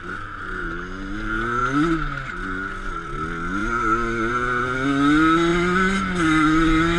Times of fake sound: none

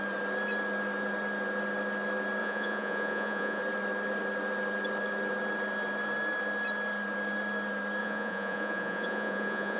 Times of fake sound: 2.4-3.6 (vocoder, Vocos); 8.0-9.8

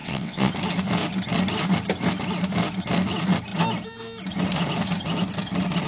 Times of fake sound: 0.0-0.5 (vocoder, WaveNeXt)

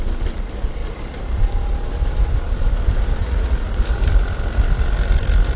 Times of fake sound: 3.2-3.8 (vocoder, Vocos)

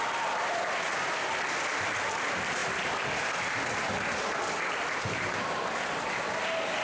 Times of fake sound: none

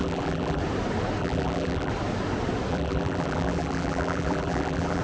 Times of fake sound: 0.0-0.6 (vocoder, BigVGAN v2); 1.2-1.9; 2.7-5.0